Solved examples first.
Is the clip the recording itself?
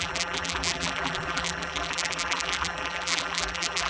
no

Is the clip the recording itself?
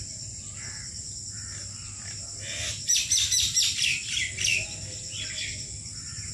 yes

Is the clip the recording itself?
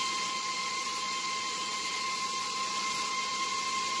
no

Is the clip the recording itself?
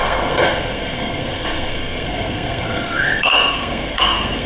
no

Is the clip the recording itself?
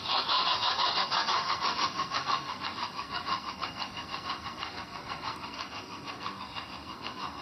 no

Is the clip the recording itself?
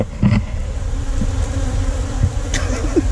yes